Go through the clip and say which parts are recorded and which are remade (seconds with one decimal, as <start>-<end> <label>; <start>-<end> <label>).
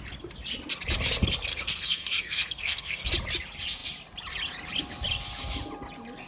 0.0-1.5 recorded; 1.5-3.1 remade; 3.1-6.3 recorded